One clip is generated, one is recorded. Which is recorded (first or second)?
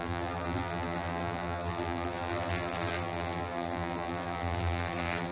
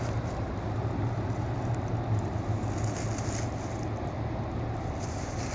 second